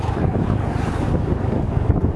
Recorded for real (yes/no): no